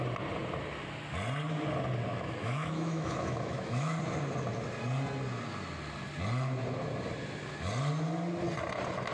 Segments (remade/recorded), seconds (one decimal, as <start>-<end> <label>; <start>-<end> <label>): 0.0-2.1 recorded; 2.1-4.0 remade; 4.0-9.1 recorded